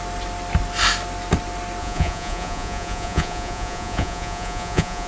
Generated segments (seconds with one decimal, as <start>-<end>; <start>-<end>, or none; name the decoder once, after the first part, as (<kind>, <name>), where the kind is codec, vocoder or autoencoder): 1.8-5.1 (vocoder, Vocos)